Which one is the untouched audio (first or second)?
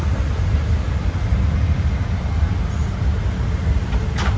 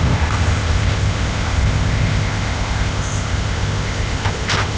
first